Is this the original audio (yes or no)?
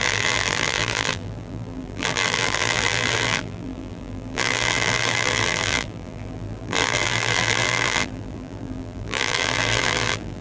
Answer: no